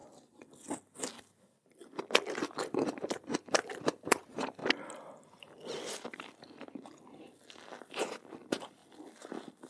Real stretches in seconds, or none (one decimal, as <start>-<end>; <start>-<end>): 0.0-3.8; 4.6-8.2; 8.8-9.7